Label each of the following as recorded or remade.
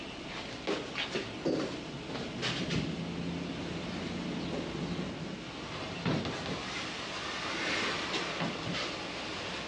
recorded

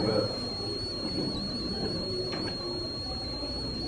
recorded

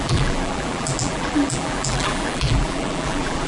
remade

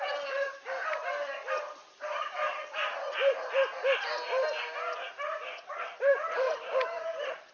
recorded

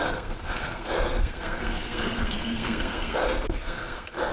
remade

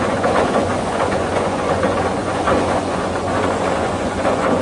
remade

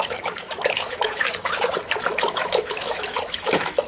remade